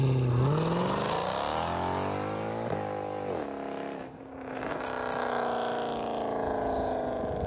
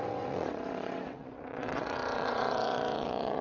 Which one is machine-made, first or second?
second